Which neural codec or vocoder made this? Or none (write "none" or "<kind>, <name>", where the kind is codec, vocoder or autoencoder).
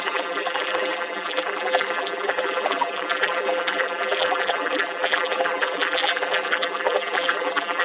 vocoder, BigVGAN v2